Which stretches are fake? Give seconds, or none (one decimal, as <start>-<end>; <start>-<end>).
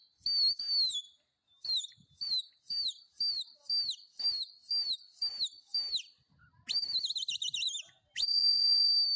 8.3-9.2